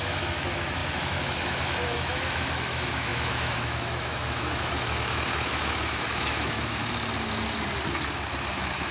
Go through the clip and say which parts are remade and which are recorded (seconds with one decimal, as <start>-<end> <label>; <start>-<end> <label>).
0.0-6.8 remade; 6.8-8.5 recorded; 8.5-8.9 remade